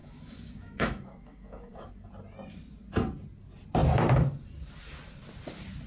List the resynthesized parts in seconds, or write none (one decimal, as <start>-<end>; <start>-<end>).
0.0-1.9